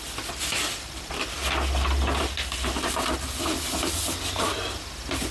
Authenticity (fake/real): real